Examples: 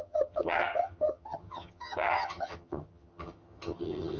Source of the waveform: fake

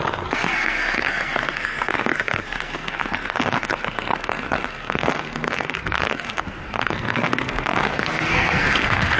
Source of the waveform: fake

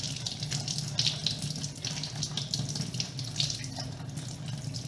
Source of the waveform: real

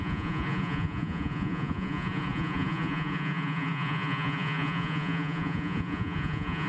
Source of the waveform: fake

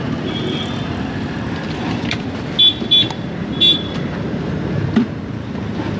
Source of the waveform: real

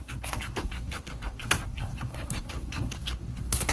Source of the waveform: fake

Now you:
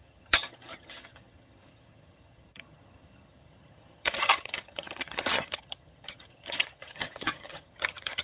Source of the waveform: fake